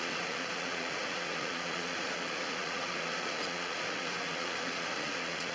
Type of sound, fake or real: fake